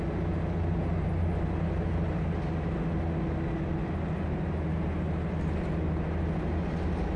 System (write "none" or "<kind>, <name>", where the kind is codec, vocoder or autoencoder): none